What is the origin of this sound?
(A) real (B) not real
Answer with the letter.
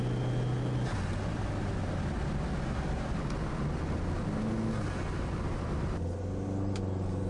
A